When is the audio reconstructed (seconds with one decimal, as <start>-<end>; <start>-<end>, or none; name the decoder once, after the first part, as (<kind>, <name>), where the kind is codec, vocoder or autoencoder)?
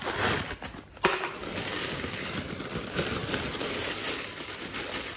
1.4-2.2 (codec, DAC)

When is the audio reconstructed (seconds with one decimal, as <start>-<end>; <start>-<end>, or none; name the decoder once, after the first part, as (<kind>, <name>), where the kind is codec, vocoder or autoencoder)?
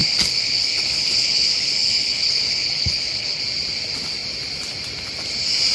0.0-3.4 (codec, HILCodec)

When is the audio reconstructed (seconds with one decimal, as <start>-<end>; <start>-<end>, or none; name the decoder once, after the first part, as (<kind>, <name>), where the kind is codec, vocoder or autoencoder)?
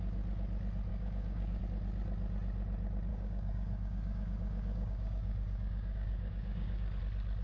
0.9-1.6 (codec, DAC); 3.1-7.0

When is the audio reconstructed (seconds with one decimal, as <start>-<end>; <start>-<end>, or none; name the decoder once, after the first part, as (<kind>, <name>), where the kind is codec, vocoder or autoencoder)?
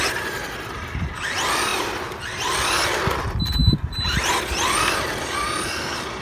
3.6-4.3 (vocoder, BigVGAN v2)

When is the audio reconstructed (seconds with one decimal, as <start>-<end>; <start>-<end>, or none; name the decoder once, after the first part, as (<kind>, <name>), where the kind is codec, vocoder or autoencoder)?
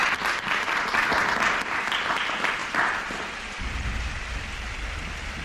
0.0-1.2 (vocoder, BigVGAN v2); 2.6-4.2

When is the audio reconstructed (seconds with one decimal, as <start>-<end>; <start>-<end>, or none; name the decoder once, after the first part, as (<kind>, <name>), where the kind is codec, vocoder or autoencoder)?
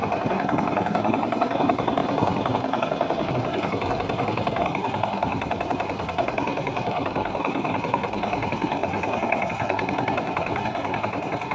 0.0-11.5 (codec, SNAC)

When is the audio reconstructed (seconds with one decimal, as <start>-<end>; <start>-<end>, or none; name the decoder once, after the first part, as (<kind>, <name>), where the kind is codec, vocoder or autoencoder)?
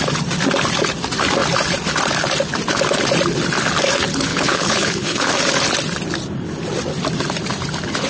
4.3-5.3 (codec, HILCodec)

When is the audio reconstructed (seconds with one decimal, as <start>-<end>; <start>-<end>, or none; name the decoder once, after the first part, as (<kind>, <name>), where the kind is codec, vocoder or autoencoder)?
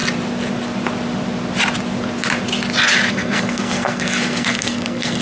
3.1-5.2 (codec, SNAC)